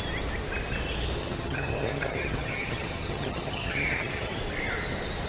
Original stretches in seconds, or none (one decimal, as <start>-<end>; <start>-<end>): 0.0-1.2; 4.4-5.3